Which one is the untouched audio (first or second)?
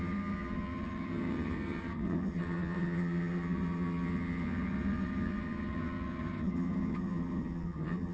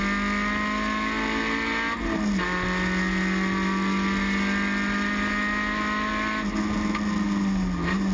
second